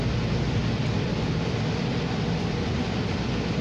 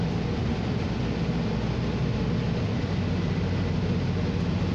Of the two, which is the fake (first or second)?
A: first